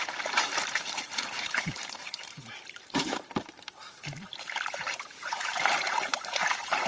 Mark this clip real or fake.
fake